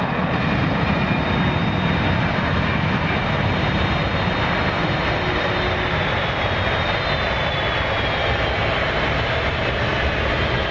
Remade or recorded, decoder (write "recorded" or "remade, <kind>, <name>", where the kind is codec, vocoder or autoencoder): recorded